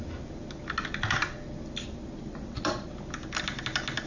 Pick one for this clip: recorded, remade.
recorded